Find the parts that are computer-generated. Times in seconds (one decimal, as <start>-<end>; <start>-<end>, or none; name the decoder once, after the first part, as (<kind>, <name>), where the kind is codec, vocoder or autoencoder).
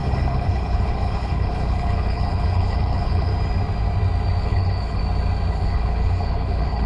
0.0-3.3 (codec, HILCodec); 4.4-5.0; 5.5-6.9